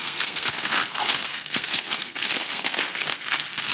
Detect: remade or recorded remade